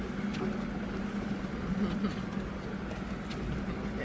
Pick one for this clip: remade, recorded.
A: recorded